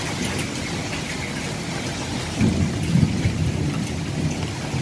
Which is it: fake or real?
real